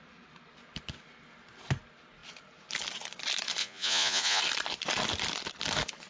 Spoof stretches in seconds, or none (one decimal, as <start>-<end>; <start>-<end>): 3.6-4.4